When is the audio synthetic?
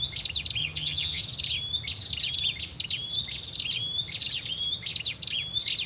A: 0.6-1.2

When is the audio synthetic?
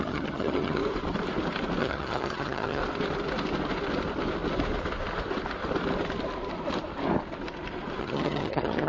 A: 0.0-0.8; 1.8-2.8; 8.0-8.9